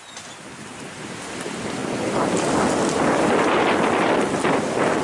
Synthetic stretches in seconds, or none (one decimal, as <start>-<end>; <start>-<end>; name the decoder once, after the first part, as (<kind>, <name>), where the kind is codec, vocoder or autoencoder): none